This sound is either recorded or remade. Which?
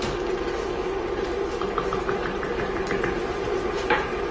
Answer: remade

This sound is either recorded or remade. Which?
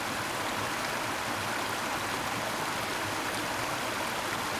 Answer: recorded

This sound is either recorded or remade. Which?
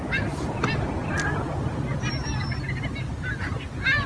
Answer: recorded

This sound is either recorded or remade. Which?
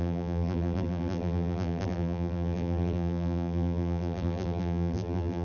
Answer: remade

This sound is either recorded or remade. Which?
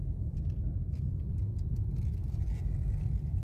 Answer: recorded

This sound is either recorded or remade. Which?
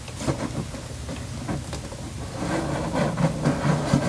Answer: recorded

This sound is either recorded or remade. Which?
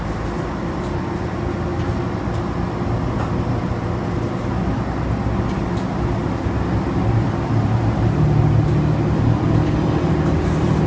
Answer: recorded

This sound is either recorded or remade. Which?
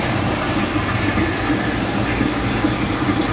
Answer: remade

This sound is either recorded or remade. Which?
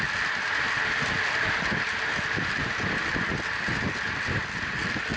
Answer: recorded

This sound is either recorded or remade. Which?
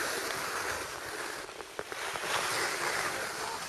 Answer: recorded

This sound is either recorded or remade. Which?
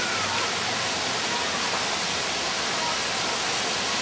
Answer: recorded